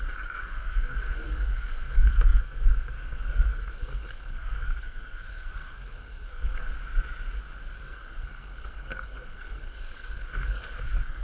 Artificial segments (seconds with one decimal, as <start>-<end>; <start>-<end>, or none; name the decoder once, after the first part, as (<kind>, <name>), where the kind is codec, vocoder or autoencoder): 0.0-6.6 (codec, SNAC); 7.8-11.2